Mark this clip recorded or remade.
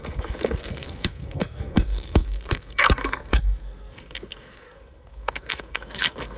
remade